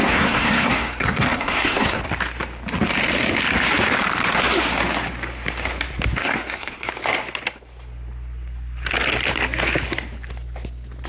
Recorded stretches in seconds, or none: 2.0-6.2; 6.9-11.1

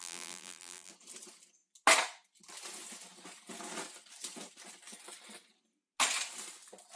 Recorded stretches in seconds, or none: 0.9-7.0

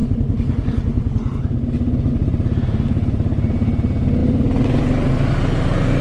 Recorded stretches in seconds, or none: 0.0-6.0